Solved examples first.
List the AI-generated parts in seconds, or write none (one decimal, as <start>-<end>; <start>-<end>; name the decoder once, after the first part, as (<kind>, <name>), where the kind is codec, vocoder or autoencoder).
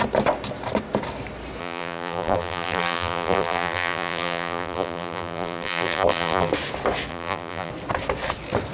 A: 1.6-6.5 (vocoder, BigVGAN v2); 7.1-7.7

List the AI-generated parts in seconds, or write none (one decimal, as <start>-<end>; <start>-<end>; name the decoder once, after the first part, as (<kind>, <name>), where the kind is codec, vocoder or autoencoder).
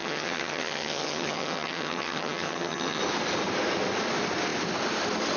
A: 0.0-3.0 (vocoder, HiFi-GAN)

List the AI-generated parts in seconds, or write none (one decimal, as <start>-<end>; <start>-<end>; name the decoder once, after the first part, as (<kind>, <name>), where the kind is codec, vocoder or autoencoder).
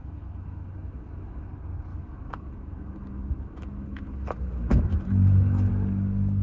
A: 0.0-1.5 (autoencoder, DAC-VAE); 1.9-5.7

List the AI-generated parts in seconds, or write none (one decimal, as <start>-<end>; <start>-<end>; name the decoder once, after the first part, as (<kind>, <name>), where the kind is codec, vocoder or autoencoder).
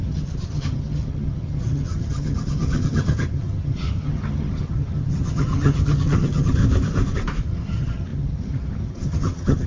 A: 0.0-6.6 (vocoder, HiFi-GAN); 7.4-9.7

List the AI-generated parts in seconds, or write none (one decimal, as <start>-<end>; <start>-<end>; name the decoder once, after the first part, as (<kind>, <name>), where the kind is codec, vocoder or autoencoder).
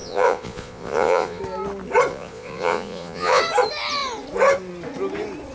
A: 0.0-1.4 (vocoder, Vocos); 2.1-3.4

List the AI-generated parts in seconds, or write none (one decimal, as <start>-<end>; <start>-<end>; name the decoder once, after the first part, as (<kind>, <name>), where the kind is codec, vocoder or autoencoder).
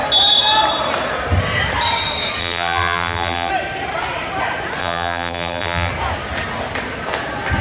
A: 2.4-3.5 (vocoder, BigVGAN v2); 4.8-5.9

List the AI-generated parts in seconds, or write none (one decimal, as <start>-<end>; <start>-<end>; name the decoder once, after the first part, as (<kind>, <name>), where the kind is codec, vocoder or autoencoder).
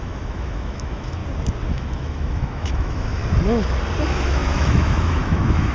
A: 0.0-1.2 (autoencoder, DAC-VAE); 1.7-3.2; 4.0-5.7